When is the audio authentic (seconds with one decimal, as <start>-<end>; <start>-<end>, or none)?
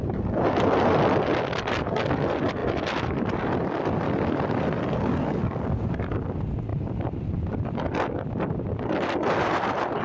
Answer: 0.0-2.6; 5.0-6.7; 7.2-10.0